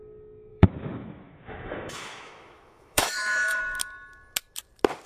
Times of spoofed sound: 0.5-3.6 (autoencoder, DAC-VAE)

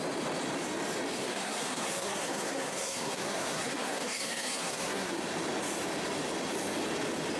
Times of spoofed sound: 1.2-5.2 (codec, SNAC)

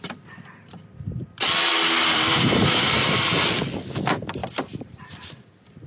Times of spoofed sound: 1.7-3.1 (vocoder, BigVGAN v2); 4.4-5.5

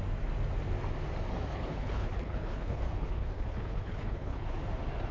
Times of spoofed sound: 1.5-4.6 (codec, HILCodec)

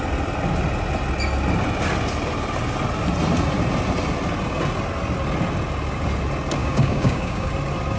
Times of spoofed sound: 6.6-7.5 (codec, DAC)

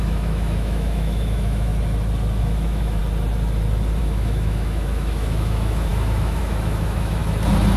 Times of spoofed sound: 0.0-1.7 (autoencoder, DAC-VAE); 2.4-3.0; 4.0-7.2

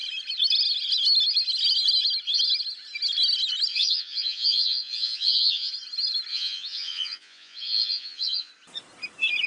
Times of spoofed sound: 3.7-5.7 (vocoder, Vocos); 6.3-8.5